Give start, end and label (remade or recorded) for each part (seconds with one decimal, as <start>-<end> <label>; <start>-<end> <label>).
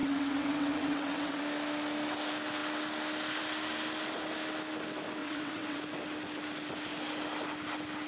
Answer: 0.0-1.4 remade; 1.4-5.2 recorded; 5.2-5.8 remade; 5.8-8.1 recorded